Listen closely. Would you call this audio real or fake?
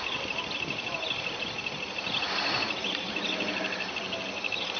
real